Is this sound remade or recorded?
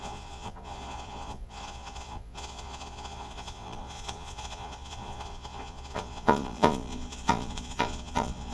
remade